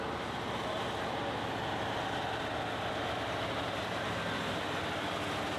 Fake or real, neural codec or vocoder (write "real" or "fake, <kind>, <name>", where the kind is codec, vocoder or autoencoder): real